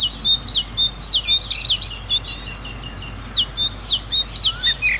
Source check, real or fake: real